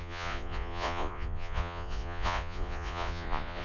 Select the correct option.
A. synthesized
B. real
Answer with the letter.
A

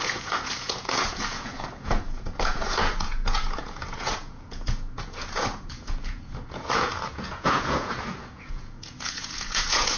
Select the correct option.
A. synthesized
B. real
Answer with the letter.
A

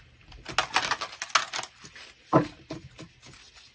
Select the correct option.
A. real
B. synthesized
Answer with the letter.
A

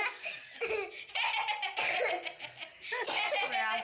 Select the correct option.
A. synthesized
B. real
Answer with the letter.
B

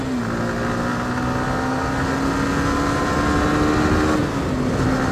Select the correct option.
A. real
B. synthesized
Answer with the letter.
A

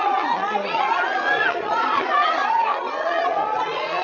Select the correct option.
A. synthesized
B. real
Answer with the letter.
A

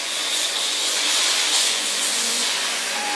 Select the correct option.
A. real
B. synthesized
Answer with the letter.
B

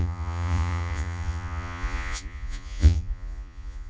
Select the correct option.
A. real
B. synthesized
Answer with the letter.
B